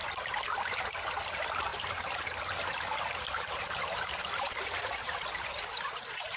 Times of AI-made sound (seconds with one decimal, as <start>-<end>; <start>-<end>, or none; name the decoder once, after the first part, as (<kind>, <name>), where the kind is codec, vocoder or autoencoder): 1.7-5.5 (vocoder, BigVGAN v2)